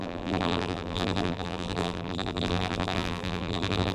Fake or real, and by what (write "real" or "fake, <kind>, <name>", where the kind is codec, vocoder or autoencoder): fake, vocoder, BigVGAN v2